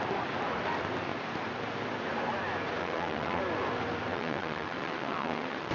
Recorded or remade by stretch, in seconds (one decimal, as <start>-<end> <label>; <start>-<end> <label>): 0.0-2.8 recorded; 2.8-3.4 remade; 3.4-4.1 recorded; 4.1-5.7 remade